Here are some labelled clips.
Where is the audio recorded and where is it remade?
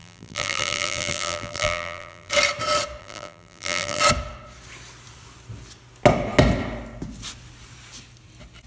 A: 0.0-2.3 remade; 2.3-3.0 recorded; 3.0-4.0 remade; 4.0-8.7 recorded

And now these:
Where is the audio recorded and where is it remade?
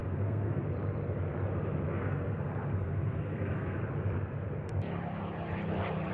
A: 0.0-0.6 remade; 0.6-1.9 recorded; 1.9-3.8 remade; 3.8-6.1 recorded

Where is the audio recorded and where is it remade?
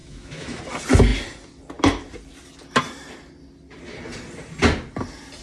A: 0.0-0.6 remade; 0.6-5.4 recorded